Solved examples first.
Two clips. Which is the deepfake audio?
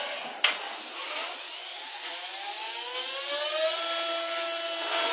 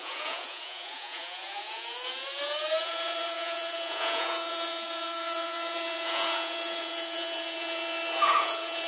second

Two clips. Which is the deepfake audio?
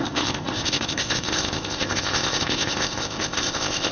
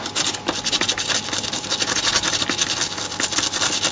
first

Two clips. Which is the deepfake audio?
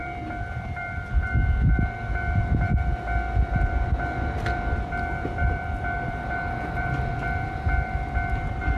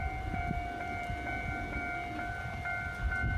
first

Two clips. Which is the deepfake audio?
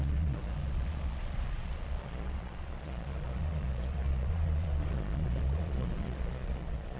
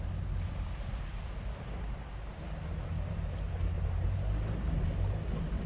first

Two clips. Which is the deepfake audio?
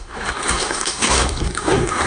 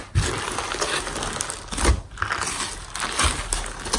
first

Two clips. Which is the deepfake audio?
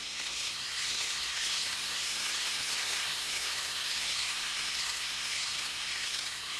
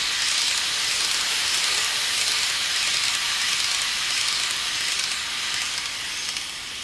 first